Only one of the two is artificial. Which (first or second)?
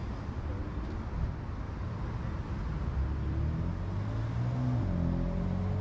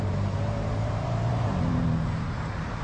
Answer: second